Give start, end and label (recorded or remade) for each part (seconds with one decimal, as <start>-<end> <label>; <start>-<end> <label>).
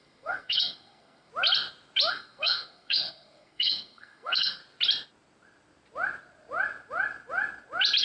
0.0-1.3 remade; 1.3-2.1 recorded; 2.1-4.6 remade; 4.6-8.0 recorded